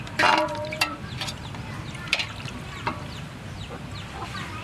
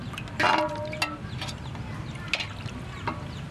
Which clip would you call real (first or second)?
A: second